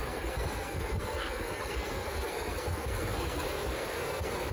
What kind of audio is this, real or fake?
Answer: fake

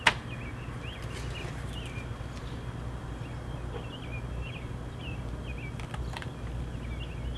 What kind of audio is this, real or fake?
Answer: real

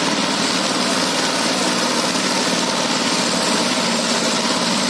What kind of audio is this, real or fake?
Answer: real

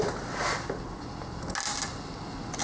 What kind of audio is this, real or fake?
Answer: real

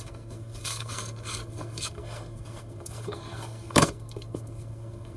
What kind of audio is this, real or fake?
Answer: fake